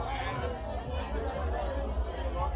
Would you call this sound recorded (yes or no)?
yes